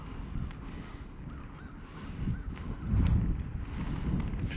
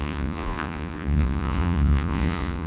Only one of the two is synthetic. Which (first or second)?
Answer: second